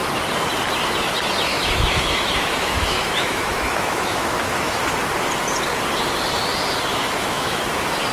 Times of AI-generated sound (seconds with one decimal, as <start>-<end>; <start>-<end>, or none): 1.5-4.8; 6.9-7.6